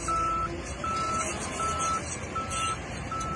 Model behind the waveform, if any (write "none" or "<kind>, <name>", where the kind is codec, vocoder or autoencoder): none